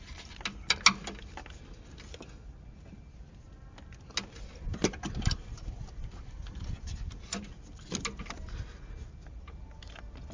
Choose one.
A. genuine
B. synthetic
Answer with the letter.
A